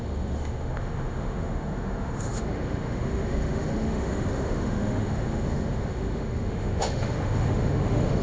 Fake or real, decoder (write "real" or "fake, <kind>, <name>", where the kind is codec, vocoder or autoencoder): fake, autoencoder, DAC-VAE